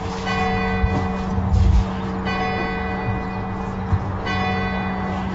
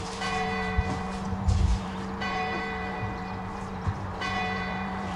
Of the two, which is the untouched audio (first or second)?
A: first